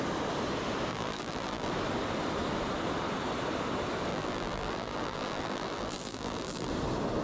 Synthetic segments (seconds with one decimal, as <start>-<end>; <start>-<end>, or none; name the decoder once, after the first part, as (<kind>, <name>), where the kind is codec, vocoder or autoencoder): 0.9-1.7 (vocoder, BigVGAN v2); 4.1-6.7

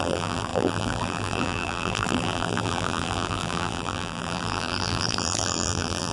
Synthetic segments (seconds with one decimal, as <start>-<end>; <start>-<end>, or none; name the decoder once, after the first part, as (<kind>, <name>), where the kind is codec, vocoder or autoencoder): 0.0-6.1 (vocoder, BigVGAN v2)

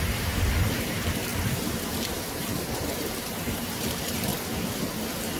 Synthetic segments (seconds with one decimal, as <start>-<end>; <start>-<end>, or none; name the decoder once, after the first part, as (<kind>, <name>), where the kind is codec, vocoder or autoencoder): 0.0-4.3 (vocoder, BigVGAN v2); 5.0-5.4

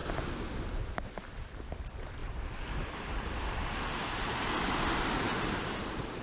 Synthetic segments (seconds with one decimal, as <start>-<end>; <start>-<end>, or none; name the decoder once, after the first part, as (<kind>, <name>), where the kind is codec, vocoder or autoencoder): 0.0-1.8 (vocoder, BigVGAN v2); 2.2-6.2

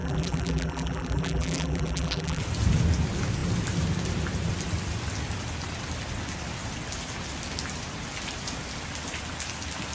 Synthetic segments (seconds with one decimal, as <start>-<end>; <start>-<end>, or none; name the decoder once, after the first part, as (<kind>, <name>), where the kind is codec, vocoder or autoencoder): 0.0-2.4 (vocoder, BigVGAN v2)